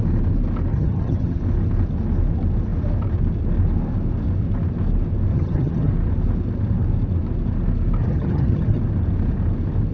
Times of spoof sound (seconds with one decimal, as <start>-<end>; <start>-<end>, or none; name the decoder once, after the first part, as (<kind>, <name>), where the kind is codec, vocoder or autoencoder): 0.7-1.4 (vocoder, HiFi-GAN); 5.3-5.9; 8.0-8.8